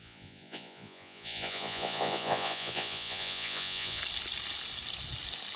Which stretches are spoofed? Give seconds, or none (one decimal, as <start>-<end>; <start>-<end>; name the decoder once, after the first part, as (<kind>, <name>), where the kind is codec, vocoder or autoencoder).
0.0-4.0 (vocoder, Vocos)

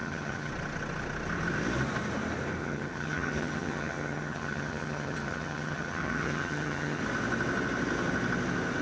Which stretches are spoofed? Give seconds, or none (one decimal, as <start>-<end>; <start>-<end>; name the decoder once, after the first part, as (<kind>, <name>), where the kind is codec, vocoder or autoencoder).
0.0-0.5 (vocoder, HiFi-GAN); 2.6-7.0

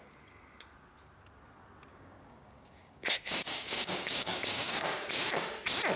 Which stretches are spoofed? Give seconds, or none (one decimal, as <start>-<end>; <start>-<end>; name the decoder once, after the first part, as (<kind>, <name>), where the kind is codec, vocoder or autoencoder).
1.9-5.5 (codec, DAC)

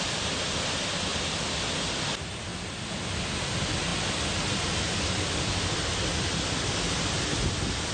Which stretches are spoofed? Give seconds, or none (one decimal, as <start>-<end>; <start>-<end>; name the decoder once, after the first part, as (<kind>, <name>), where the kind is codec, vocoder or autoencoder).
none